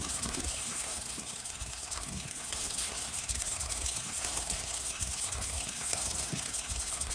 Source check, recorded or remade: remade